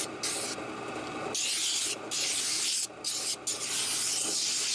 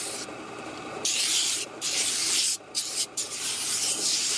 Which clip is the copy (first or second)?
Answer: second